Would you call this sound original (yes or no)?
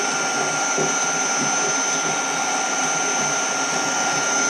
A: yes